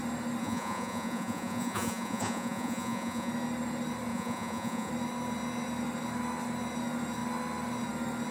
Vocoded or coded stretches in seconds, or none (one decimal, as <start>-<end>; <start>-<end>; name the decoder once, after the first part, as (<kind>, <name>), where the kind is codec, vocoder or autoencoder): 0.4-3.3 (vocoder, Vocos); 4.1-4.9